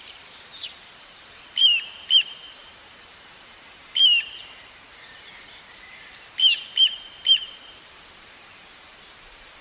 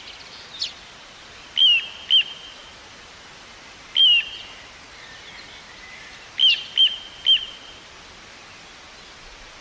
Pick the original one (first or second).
second